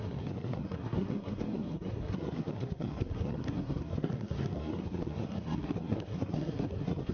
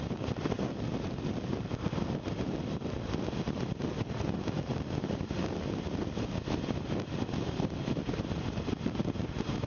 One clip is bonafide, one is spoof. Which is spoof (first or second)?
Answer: first